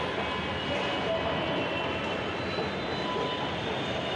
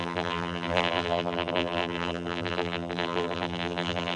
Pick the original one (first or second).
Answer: first